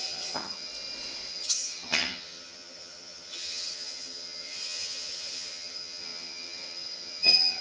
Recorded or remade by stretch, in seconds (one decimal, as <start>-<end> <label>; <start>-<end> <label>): 0.0-0.7 remade; 0.7-1.3 recorded; 1.3-7.6 remade